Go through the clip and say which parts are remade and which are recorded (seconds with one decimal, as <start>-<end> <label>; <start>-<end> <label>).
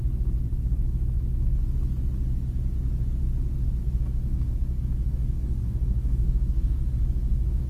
0.0-3.8 recorded; 3.8-7.7 remade